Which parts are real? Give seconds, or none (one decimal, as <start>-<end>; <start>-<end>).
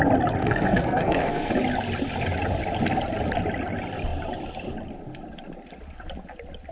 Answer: 0.0-0.4; 1.5-6.7